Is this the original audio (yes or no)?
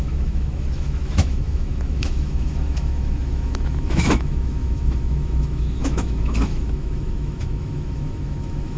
no